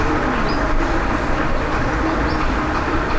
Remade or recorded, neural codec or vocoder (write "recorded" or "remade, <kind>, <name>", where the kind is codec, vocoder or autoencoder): recorded